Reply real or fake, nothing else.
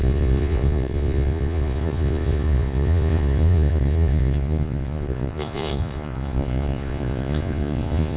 fake